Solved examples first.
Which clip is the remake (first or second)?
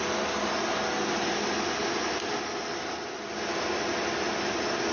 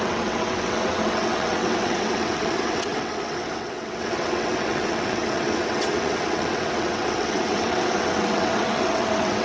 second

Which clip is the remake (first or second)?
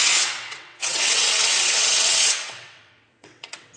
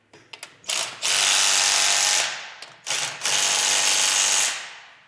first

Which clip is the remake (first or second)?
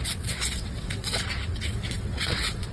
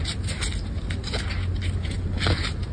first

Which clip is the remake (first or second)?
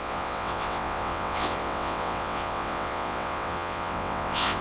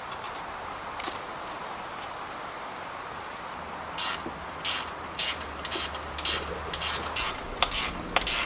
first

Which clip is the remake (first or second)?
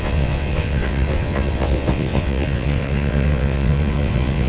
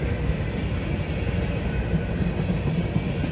first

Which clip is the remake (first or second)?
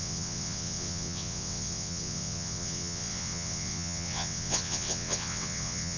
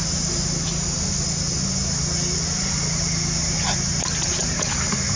first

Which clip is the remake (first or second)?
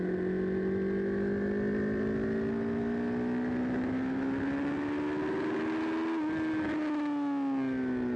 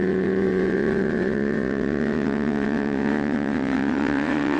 second